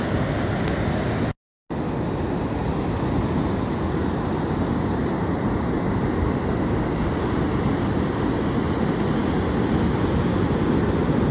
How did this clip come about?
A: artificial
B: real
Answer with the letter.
B